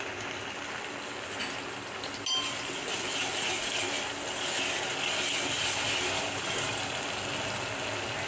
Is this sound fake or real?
real